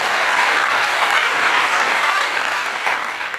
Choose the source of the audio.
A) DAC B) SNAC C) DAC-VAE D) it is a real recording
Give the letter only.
A